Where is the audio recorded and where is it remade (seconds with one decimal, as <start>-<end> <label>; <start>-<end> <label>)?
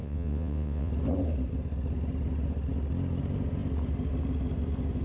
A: 0.0-0.9 remade; 0.9-5.0 recorded